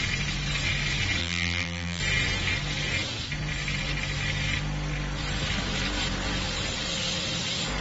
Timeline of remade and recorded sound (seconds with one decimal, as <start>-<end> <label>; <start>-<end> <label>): 0.0-1.2 recorded; 1.2-2.0 remade; 2.0-7.8 recorded